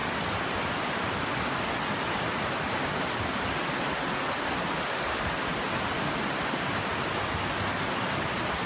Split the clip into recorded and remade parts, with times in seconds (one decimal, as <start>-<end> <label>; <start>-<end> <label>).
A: 0.0-8.7 recorded